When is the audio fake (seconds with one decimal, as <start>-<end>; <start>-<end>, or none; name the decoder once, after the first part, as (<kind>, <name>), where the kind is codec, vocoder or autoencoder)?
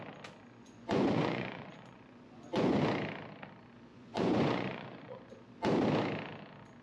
0.6-2.8 (vocoder, Vocos); 3.9-5.4